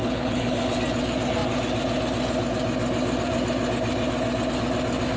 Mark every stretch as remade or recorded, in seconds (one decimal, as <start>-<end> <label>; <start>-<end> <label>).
0.0-0.8 remade; 0.8-5.2 recorded